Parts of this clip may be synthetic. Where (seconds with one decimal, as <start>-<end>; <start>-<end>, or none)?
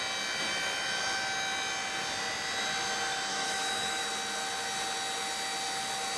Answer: 3.3-4.1